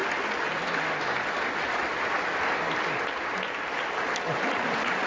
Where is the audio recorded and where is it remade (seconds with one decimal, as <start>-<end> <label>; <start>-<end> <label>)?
0.0-5.1 recorded